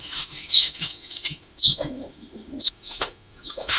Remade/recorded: remade